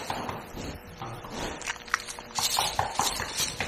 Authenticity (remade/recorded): remade